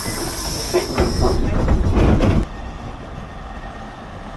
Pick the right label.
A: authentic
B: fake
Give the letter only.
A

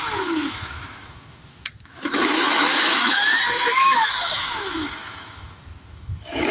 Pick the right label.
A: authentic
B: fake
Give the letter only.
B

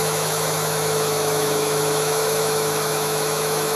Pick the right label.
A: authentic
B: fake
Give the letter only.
B